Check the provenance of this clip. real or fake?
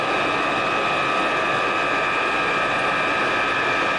real